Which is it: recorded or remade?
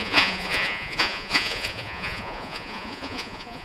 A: remade